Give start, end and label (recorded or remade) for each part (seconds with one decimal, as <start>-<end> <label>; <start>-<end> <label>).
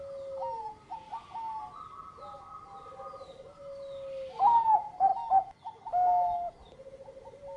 0.0-7.6 recorded